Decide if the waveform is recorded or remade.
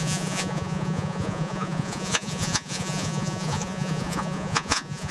remade